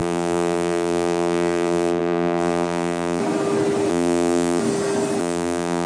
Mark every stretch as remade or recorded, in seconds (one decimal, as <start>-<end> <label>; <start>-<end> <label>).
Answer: 0.0-3.2 remade; 3.2-3.9 recorded; 3.9-4.6 remade; 4.6-5.2 recorded; 5.2-5.9 remade